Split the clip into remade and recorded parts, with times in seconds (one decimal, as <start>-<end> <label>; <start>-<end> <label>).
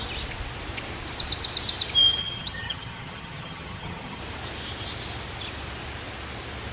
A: 0.0-2.2 recorded; 2.2-4.2 remade; 4.2-6.7 recorded